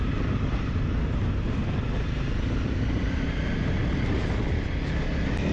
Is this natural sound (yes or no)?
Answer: yes